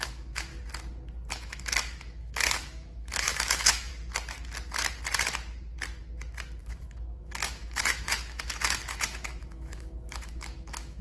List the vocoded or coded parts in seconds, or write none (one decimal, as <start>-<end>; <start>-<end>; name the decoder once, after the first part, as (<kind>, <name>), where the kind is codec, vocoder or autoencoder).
0.0-0.5 (autoencoder, DAC-VAE); 1.3-3.9; 6.6-11.0